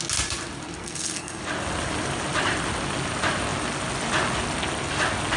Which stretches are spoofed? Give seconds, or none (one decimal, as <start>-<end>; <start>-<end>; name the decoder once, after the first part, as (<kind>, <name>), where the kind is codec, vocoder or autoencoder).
0.8-1.4 (codec, SNAC)